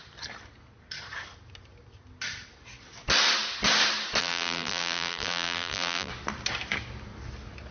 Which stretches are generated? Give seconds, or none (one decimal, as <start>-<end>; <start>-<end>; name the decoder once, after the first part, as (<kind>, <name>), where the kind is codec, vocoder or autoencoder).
4.2-6.1 (vocoder, BigVGAN v2)